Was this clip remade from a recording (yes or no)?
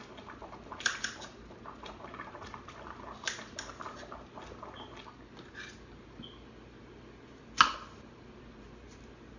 no